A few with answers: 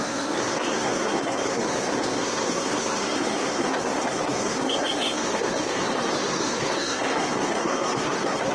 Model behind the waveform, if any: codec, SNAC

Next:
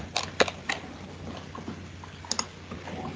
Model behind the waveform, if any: none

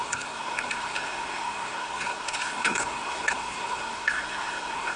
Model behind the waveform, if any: codec, SNAC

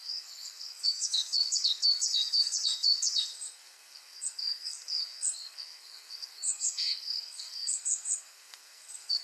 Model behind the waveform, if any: codec, SNAC